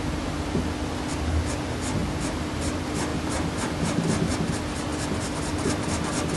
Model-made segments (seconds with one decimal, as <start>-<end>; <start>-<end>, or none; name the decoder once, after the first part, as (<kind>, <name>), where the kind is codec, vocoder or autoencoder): 2.0-2.5 (vocoder, BigVGAN v2); 3.1-4.3